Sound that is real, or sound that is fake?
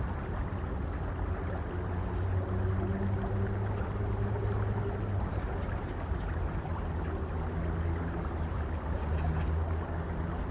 real